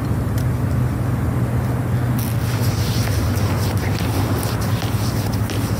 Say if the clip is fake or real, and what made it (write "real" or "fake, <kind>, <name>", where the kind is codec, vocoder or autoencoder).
real